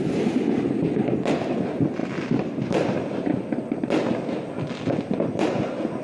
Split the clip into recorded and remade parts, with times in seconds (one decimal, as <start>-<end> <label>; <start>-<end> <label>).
0.0-6.0 recorded